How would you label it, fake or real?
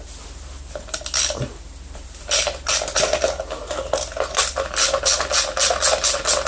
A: real